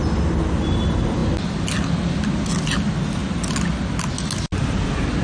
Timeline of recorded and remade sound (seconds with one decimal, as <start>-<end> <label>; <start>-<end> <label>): 0.0-5.2 recorded